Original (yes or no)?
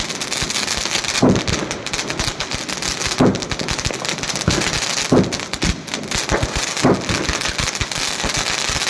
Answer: yes